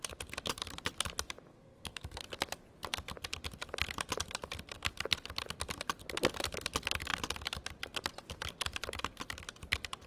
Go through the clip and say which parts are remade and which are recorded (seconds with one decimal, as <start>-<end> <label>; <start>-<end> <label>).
0.0-1.5 recorded; 1.5-2.2 remade; 2.2-10.1 recorded